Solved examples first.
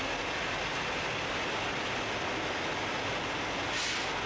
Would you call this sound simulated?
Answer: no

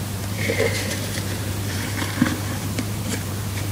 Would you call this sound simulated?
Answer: yes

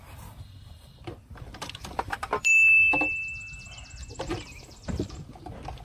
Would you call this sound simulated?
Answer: yes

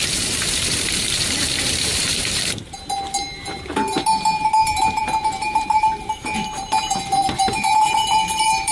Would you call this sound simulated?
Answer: yes